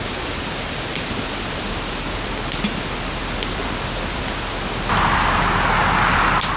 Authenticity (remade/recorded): recorded